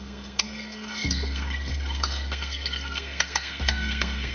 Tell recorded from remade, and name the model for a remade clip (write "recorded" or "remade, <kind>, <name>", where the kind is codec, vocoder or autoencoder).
remade, codec, SNAC